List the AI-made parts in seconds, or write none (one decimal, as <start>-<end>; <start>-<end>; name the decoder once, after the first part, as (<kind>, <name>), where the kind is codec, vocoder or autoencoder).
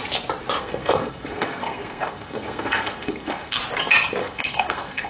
0.6-3.6 (codec, SNAC); 4.2-5.1